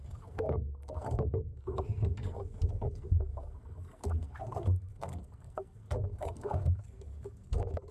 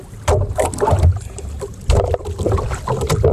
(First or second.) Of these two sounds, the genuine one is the second